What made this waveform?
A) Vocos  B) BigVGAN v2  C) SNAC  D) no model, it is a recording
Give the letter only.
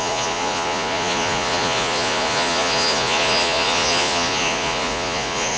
A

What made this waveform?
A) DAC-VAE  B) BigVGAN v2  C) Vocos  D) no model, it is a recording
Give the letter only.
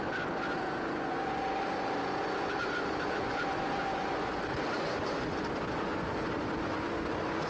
C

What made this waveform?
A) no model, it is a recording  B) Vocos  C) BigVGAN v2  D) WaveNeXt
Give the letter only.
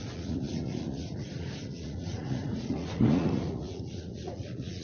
B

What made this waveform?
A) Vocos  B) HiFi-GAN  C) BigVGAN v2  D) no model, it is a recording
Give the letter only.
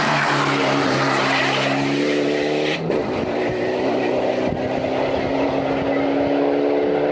D